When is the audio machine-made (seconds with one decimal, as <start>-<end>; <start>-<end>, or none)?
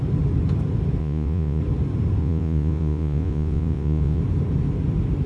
1.0-1.6; 2.2-4.2